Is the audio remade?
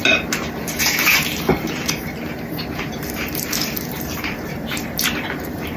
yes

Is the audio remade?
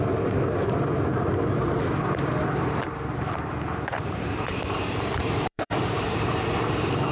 yes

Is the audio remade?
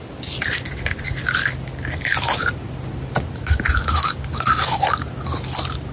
no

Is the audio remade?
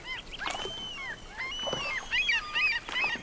no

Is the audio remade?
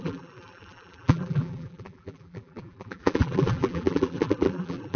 yes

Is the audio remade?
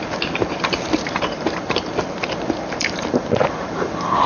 yes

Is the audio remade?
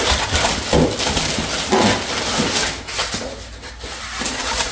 no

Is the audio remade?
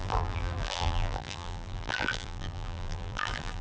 yes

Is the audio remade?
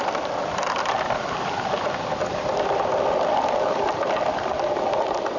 yes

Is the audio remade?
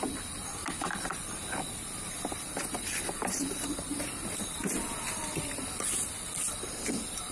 yes